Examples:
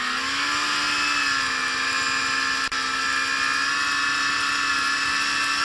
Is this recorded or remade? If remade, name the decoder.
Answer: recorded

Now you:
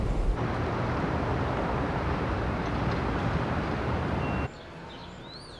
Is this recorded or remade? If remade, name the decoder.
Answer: recorded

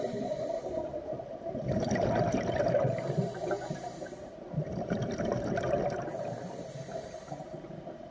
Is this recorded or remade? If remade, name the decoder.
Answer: remade, vocoder, BigVGAN v2